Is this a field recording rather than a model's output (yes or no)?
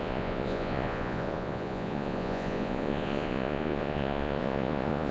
no